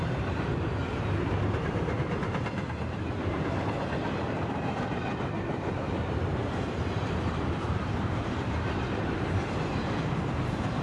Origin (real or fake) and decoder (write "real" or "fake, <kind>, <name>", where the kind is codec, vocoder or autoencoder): fake, vocoder, BigVGAN v2